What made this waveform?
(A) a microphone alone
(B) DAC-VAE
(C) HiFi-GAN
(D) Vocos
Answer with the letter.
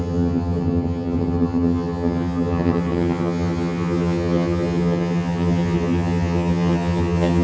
C